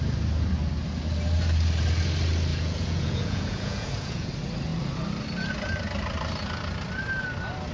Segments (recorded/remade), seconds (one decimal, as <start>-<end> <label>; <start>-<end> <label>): 0.0-2.5 recorded; 2.5-4.3 remade; 4.3-7.7 recorded